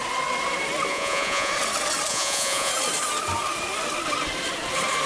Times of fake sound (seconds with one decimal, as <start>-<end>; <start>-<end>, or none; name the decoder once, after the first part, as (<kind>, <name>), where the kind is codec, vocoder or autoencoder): 0.9-1.5 (vocoder, Vocos); 2.1-2.7

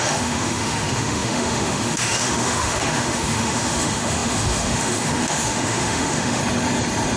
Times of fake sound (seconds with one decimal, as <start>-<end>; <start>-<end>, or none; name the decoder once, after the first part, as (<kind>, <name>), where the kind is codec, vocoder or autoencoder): 0.0-6.4 (autoencoder, DAC-VAE)

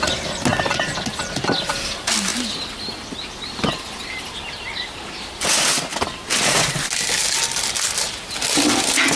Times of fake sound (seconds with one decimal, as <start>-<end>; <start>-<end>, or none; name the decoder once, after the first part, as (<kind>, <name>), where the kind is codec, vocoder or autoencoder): none